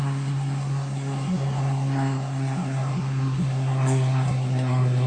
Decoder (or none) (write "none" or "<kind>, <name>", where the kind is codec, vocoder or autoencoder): codec, SNAC